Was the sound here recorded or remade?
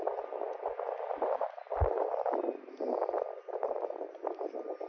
recorded